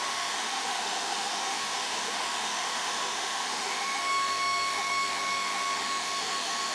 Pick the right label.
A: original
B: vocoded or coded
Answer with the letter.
B